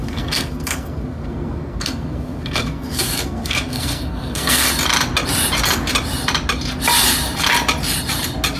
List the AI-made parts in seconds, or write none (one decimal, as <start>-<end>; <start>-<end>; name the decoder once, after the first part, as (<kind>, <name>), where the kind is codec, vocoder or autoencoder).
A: 0.0-4.7 (codec, SNAC)